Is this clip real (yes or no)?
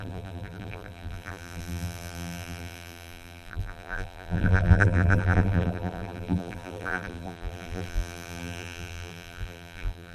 no